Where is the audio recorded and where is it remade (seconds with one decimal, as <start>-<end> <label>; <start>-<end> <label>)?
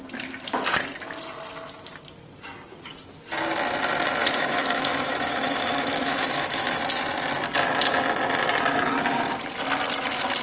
0.0-4.2 recorded; 4.2-6.8 remade; 6.8-10.4 recorded